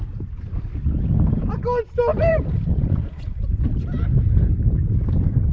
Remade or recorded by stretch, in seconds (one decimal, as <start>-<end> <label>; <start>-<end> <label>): 0.0-2.1 recorded; 2.1-3.6 remade; 3.6-5.5 recorded